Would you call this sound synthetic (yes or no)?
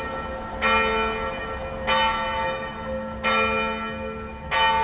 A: no